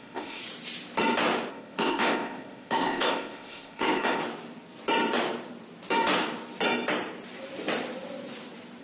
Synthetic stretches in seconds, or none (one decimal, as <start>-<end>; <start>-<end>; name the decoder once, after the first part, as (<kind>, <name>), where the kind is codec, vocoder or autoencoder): 0.0-0.4 (codec, ZipCodec); 1.5-4.2